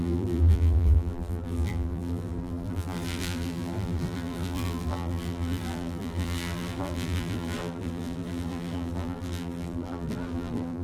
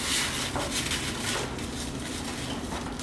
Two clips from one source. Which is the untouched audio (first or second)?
second